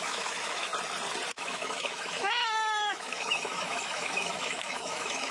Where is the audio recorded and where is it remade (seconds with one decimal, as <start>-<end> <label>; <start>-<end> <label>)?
0.0-0.7 remade; 0.7-1.3 recorded; 1.3-2.4 remade; 2.4-2.9 recorded; 2.9-5.3 remade